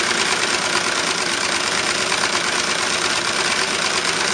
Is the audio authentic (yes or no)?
yes